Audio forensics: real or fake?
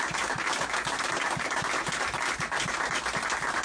real